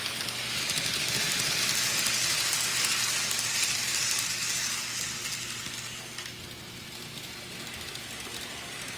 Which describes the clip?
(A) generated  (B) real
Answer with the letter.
B